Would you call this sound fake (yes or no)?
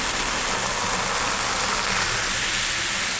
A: no